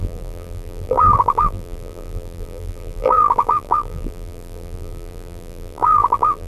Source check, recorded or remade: remade